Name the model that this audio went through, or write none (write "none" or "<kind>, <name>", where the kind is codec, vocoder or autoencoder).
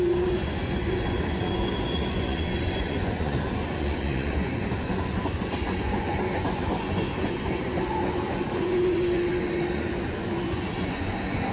vocoder, Vocos